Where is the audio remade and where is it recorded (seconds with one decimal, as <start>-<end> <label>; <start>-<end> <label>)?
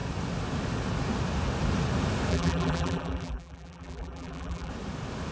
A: 0.0-2.3 recorded; 2.3-4.7 remade; 4.7-5.3 recorded